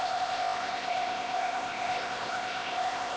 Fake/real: fake